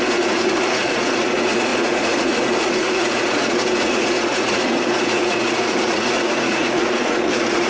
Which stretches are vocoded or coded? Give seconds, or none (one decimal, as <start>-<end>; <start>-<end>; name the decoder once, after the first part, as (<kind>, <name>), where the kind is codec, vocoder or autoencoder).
0.0-7.7 (vocoder, Vocos)